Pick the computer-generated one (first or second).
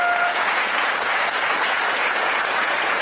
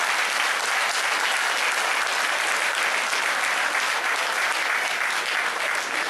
first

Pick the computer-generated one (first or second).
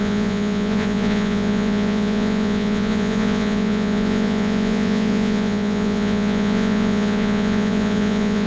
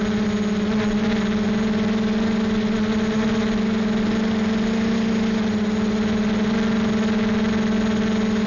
first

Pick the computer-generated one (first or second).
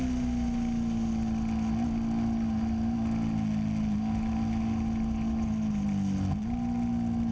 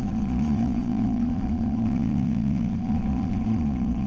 second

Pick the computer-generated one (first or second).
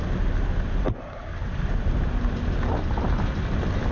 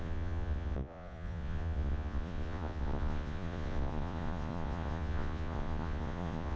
second